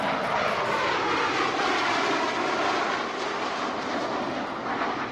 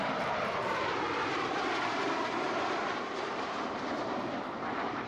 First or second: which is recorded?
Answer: first